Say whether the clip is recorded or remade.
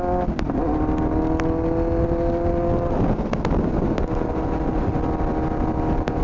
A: recorded